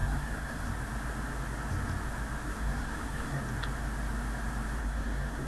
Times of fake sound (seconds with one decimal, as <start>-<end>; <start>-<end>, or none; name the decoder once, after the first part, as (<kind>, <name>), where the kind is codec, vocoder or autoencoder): 0.0-0.7 (codec, SNAC); 2.5-3.4; 4.8-5.5